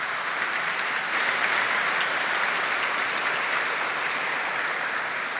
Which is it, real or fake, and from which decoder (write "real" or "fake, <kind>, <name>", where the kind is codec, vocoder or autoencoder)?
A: real